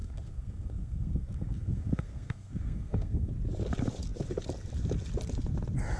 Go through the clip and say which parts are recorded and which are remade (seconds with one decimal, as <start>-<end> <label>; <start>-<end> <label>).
0.0-3.3 remade; 3.3-6.0 recorded

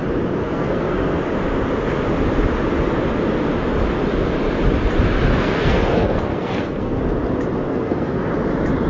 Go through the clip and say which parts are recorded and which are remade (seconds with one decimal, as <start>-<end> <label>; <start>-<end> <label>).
0.0-0.4 recorded; 0.4-1.2 remade; 1.2-5.3 recorded; 5.3-7.0 remade; 7.0-7.7 recorded; 7.7-8.3 remade; 8.3-8.9 recorded

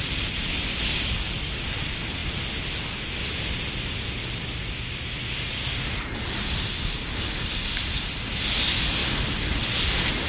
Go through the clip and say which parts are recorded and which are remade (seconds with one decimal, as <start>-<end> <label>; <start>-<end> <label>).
0.0-10.3 recorded

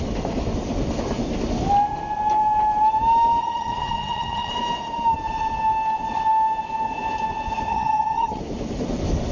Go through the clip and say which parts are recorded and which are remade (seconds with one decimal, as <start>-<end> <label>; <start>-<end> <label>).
0.0-3.4 recorded; 3.4-4.5 remade; 4.5-7.7 recorded; 7.7-8.4 remade; 8.4-9.3 recorded